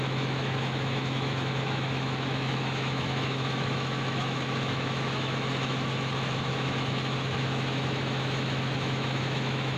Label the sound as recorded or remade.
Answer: remade